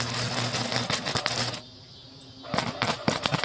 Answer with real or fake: real